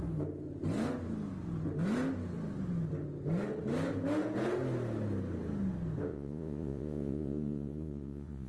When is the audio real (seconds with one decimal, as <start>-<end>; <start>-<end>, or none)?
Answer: 0.0-6.1